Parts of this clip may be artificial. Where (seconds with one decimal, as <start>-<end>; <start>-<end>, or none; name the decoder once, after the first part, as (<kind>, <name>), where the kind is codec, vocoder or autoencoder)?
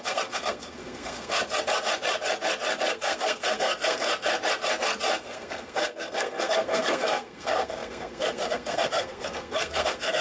0.0-1.4 (codec, SNAC); 2.9-4.1; 5.2-10.2